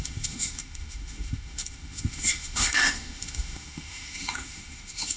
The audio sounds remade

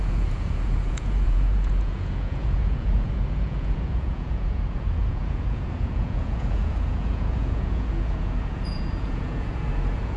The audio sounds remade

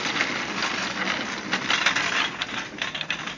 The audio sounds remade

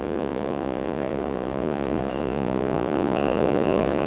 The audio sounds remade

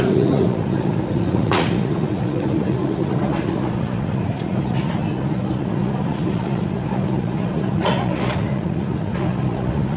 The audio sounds remade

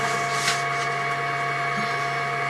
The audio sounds recorded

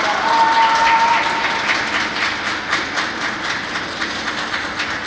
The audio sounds recorded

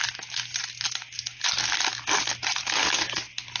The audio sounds recorded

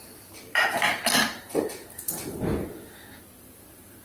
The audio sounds remade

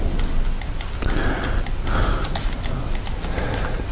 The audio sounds recorded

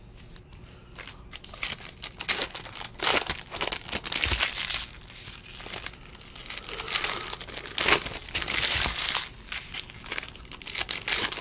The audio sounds recorded